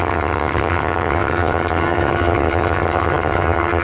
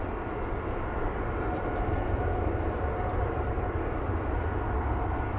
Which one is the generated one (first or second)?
first